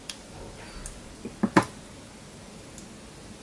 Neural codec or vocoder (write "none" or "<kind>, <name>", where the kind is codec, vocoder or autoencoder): none